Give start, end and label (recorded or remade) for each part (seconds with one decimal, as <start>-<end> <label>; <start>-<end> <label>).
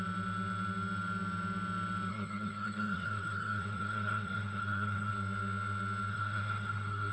0.0-2.1 recorded; 2.1-5.1 remade; 5.1-6.1 recorded; 6.1-7.1 remade